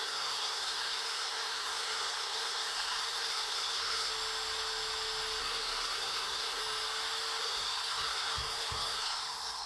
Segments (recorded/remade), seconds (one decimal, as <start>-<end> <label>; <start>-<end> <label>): 0.0-4.1 remade; 4.1-5.4 recorded; 5.4-6.6 remade; 6.6-7.4 recorded; 7.4-9.7 remade